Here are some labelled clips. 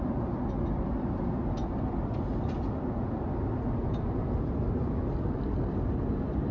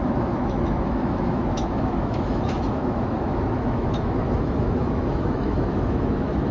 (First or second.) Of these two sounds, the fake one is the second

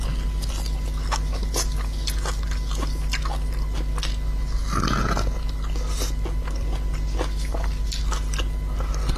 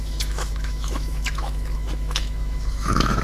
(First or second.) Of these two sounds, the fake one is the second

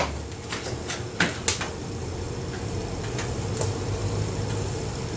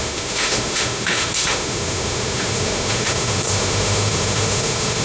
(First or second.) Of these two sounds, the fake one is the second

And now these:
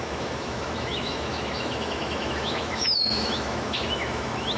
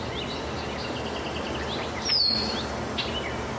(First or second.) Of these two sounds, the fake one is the first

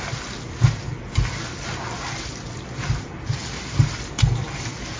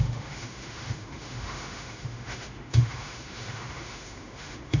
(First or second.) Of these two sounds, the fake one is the second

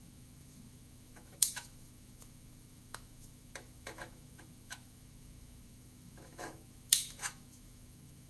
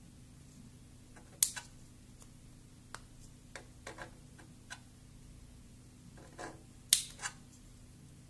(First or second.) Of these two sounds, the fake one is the first